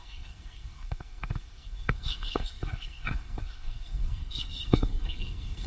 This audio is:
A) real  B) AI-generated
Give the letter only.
B